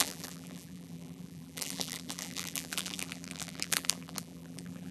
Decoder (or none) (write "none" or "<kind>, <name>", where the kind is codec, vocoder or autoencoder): vocoder, BigVGAN v2